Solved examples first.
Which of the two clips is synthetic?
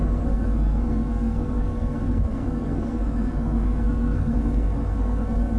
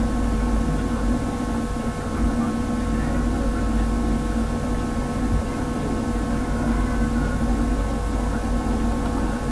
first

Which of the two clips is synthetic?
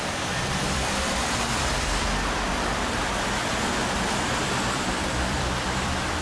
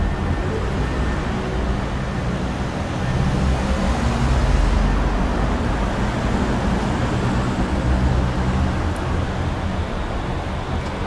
first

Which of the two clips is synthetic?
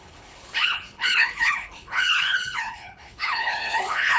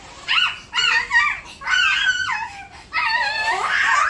first